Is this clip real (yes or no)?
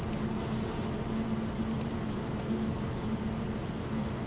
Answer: yes